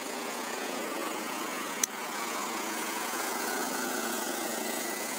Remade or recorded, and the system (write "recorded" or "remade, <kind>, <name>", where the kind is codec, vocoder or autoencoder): remade, vocoder, Vocos